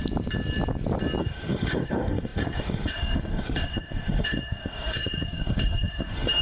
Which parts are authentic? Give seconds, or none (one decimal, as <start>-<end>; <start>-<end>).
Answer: 0.0-1.2